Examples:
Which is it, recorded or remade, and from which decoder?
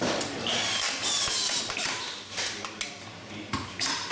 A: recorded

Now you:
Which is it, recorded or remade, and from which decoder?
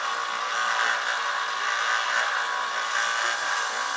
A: recorded